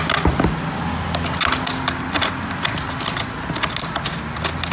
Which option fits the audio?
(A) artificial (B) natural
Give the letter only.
B